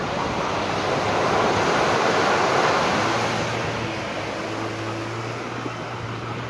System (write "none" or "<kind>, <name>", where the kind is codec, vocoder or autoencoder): none